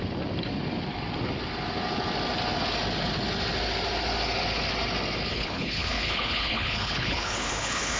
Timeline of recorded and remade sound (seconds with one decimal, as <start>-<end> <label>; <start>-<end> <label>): 0.0-5.3 recorded; 5.3-8.0 remade